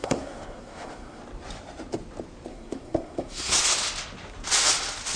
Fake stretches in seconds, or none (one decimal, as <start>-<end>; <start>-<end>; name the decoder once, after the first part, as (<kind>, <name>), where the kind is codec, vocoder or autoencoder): 0.0-1.2 (codec, SNAC); 2.5-3.6